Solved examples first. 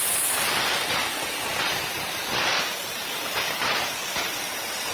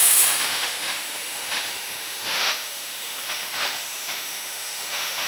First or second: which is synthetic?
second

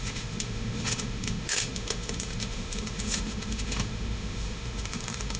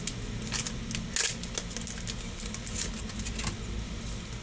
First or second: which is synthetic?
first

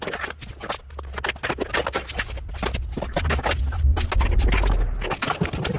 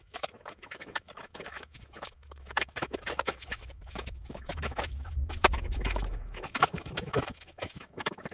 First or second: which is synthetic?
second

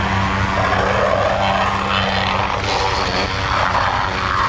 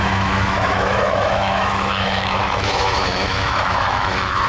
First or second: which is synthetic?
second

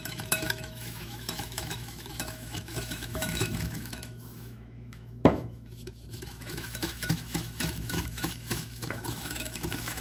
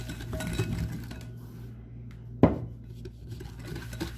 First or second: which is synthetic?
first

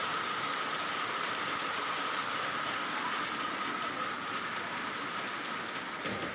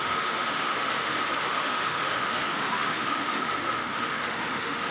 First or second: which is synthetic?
second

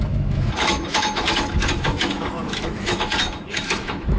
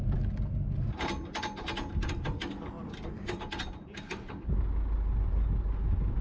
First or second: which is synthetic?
first